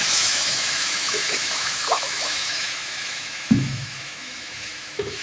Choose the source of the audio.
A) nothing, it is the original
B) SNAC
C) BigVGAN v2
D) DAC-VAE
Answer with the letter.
D